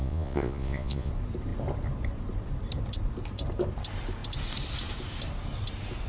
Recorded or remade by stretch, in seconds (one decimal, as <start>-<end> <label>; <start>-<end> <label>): 0.0-1.1 remade; 1.1-6.1 recorded